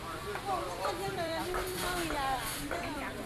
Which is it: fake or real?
fake